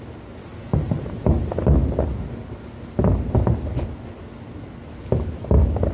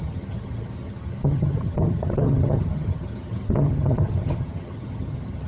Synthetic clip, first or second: second